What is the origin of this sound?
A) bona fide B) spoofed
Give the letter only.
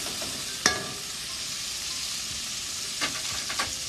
B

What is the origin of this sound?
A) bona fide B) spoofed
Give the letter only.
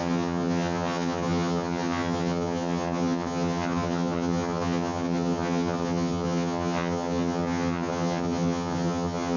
B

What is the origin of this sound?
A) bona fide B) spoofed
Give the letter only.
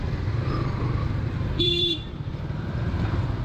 B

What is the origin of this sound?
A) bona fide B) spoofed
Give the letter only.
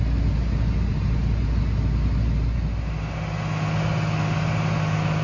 A